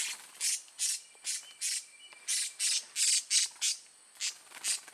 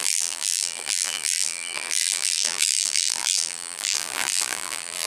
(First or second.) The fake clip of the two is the second